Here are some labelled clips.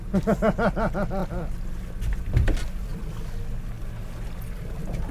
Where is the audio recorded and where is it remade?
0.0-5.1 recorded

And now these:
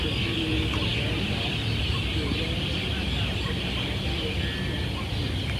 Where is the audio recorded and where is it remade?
0.0-5.6 recorded

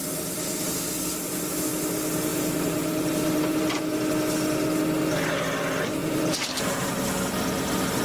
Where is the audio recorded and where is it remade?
0.0-0.9 remade; 0.9-2.3 recorded; 2.3-3.8 remade; 3.8-6.0 recorded; 6.0-6.9 remade; 6.9-8.0 recorded